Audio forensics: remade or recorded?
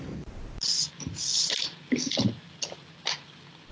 recorded